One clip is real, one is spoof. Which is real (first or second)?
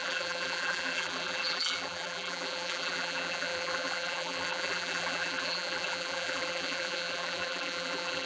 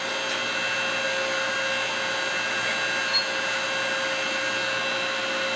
second